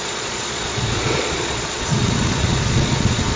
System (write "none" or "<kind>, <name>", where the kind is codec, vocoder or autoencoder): vocoder, Vocos